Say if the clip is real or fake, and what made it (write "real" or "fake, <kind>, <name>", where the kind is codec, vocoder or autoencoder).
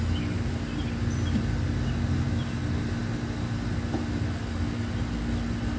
real